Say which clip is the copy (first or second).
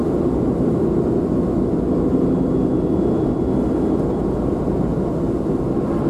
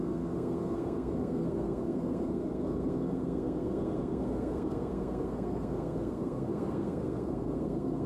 second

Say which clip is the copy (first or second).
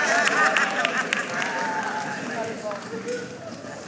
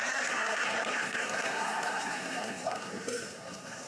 second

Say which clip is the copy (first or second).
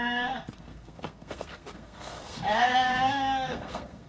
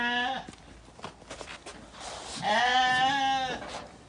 first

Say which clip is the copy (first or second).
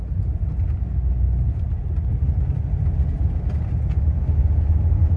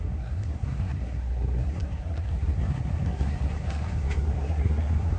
second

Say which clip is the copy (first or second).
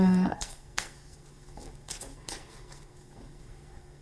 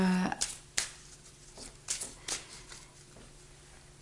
first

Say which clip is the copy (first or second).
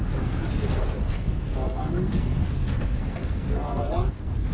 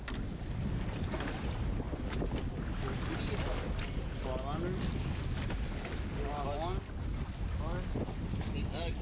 first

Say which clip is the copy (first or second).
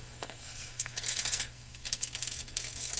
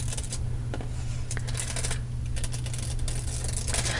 first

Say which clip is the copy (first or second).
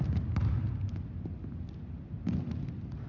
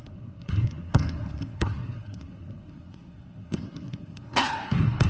second